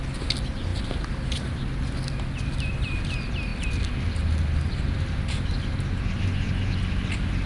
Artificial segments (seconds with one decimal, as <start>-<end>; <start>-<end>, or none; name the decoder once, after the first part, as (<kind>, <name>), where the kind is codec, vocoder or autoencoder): none